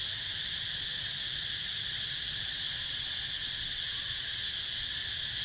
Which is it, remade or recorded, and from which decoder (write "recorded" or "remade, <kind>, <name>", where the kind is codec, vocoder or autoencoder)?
recorded